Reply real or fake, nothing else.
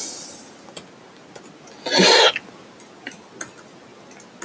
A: real